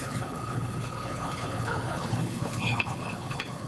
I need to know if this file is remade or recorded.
remade